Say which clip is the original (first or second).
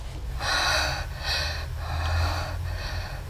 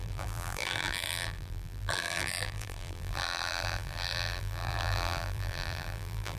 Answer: first